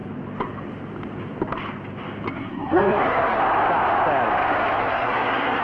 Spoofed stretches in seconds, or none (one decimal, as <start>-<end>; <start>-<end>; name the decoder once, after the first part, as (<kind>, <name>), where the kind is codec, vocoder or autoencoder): 2.3-3.4 (codec, SNAC); 4.8-5.6